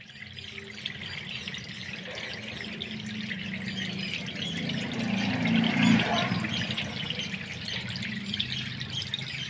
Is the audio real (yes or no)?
yes